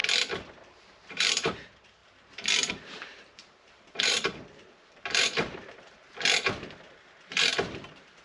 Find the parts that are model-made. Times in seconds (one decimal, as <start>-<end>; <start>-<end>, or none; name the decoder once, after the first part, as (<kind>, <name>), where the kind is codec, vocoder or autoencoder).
0.6-2.0 (vocoder, BigVGAN v2); 2.7-6.0; 7.2-8.2